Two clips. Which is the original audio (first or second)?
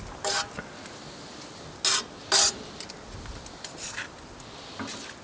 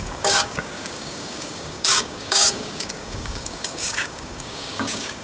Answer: first